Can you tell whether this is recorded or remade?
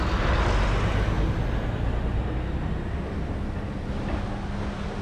recorded